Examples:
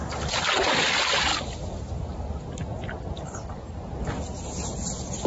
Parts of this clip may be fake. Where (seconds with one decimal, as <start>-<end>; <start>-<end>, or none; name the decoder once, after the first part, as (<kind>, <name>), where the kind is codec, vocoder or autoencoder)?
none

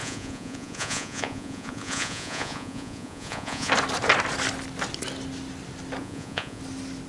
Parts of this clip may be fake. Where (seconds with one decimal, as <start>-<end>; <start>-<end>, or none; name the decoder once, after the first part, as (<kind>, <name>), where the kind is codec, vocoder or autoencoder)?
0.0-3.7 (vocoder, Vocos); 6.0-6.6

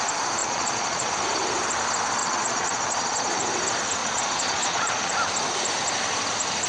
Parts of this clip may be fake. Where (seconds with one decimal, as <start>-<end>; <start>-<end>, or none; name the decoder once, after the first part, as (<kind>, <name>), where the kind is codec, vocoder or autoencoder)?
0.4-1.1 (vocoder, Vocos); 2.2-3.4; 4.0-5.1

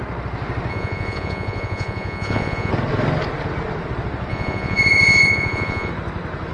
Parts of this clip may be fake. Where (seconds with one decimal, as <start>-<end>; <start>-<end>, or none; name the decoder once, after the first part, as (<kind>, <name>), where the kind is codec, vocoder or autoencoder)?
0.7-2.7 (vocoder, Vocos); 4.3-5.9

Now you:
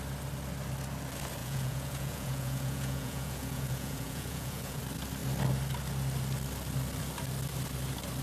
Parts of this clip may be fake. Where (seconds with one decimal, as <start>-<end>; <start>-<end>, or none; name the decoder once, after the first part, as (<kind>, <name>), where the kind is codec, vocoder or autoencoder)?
1.4-4.8 (vocoder, Vocos)

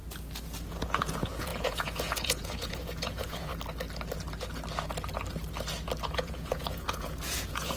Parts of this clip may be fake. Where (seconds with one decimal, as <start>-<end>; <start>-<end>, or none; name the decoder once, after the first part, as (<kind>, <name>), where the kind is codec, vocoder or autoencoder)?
0.7-3.5 (vocoder, Vocos); 6.1-7.8